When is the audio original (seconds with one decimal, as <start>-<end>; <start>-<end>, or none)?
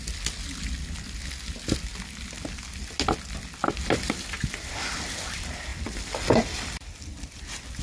0.0-5.7